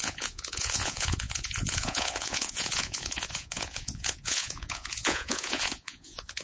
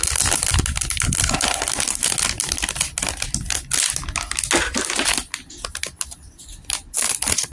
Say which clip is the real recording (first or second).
second